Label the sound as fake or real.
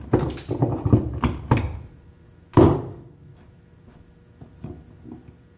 real